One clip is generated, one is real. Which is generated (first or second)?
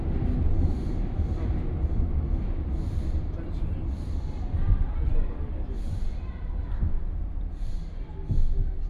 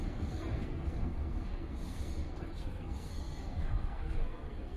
second